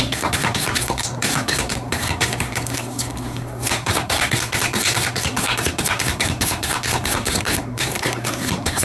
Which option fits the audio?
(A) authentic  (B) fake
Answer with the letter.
B